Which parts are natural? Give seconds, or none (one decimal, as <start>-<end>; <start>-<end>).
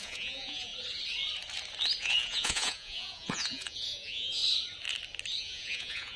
0.7-2.0; 4.4-5.4